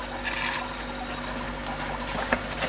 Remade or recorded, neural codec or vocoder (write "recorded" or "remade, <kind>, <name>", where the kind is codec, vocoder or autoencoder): recorded